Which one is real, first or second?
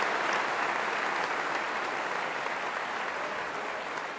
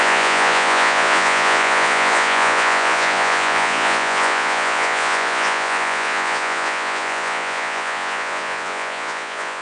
first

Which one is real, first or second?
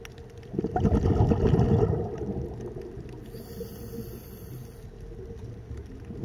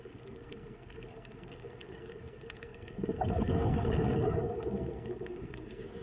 first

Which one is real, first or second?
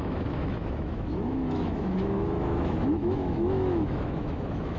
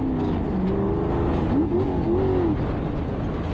second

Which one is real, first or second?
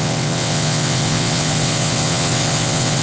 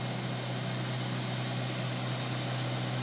second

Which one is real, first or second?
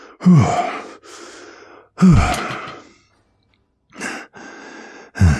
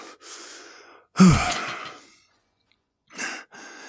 first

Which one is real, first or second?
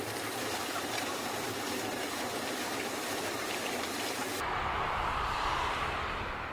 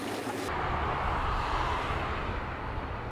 second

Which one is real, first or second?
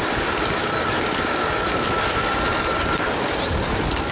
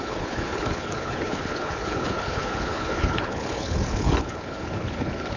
first